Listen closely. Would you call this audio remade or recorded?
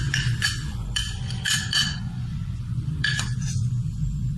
remade